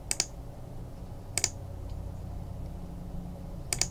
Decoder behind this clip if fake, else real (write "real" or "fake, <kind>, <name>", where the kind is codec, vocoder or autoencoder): real